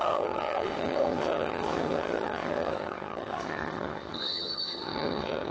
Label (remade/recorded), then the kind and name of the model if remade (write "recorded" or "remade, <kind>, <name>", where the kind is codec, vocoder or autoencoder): remade, vocoder, HiFi-GAN